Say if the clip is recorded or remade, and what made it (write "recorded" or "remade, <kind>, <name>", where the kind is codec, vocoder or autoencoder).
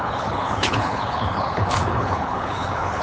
remade, codec, HILCodec